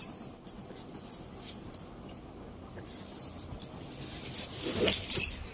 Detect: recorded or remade recorded